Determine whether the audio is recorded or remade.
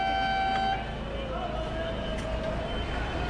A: recorded